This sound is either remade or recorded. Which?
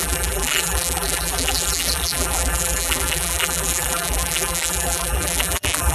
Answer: remade